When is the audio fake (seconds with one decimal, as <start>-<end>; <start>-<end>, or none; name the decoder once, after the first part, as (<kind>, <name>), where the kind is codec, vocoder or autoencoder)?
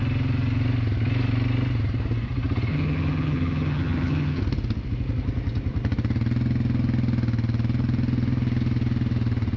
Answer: 2.7-4.4 (vocoder, HiFi-GAN)